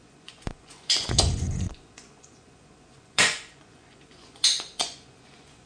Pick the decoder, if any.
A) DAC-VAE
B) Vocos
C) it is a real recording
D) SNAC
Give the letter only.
B